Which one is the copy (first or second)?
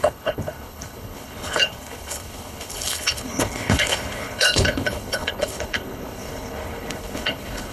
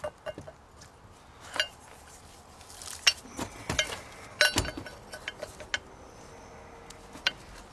first